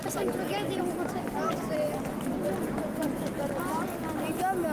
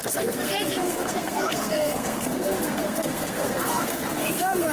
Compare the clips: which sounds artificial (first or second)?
second